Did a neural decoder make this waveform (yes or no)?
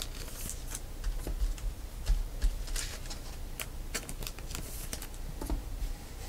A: no